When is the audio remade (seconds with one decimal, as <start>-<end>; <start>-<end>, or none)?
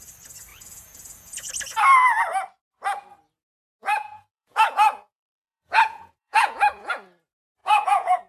0.5-1.5; 3.8-6.9; 7.6-8.3